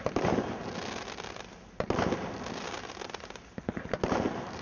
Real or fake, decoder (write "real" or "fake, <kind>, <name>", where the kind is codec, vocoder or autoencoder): real